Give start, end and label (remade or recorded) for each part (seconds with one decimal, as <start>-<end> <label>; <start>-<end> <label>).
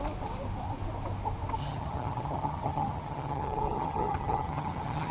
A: 0.0-1.6 recorded; 1.6-5.1 remade